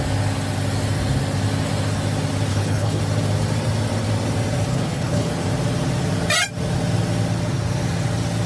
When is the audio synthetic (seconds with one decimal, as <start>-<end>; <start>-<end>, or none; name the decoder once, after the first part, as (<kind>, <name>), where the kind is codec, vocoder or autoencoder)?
2.5-3.0 (codec, HILCodec); 4.7-5.3